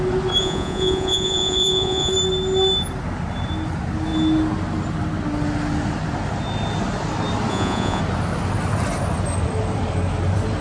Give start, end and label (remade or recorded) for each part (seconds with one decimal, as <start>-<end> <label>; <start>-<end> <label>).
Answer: 0.0-0.4 recorded; 0.4-2.1 remade; 2.1-7.5 recorded; 7.5-8.0 remade; 8.0-10.6 recorded